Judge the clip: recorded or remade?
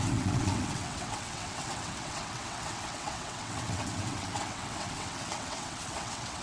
remade